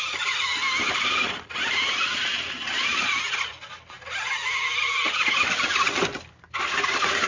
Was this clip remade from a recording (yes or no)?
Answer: no